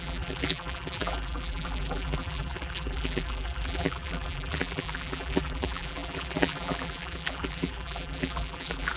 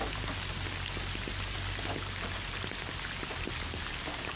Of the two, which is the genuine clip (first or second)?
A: second